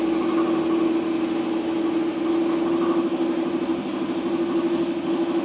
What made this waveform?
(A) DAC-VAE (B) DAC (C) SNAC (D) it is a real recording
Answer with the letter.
D